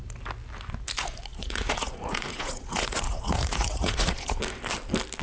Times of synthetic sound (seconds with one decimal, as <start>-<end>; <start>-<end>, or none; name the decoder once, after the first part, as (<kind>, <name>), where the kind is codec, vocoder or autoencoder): 1.3-4.4 (vocoder, Vocos)